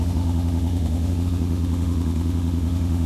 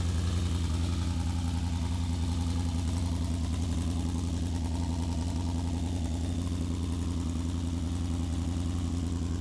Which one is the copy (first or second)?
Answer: first